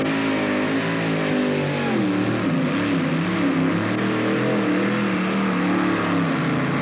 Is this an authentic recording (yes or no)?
yes